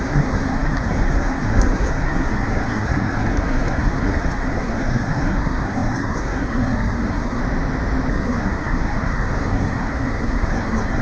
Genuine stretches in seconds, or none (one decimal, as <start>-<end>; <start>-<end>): 7.4-8.1